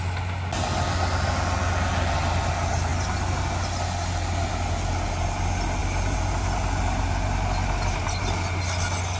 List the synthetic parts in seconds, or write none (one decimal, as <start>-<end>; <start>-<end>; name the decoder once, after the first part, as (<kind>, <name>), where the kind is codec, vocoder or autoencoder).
none